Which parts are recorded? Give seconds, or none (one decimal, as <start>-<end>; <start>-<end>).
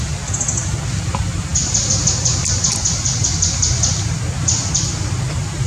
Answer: 0.0-5.7